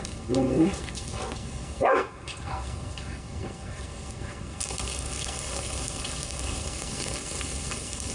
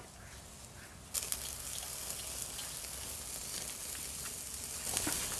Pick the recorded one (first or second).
second